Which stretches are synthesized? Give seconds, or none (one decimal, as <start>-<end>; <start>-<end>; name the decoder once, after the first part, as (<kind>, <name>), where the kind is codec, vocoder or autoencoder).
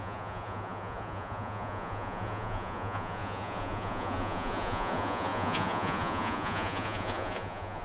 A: 0.0-7.8 (vocoder, Vocos)